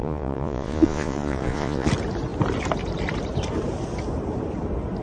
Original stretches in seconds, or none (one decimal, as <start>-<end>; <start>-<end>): 1.9-5.0